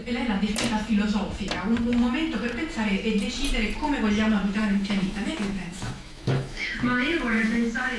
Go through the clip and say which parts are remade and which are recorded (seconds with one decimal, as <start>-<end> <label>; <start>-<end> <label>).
0.0-4.6 recorded; 4.6-8.0 remade